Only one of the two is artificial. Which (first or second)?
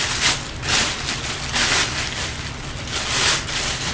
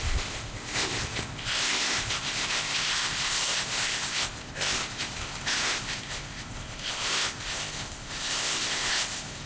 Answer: second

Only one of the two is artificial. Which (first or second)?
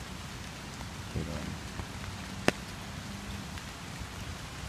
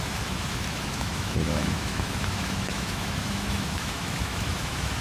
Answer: second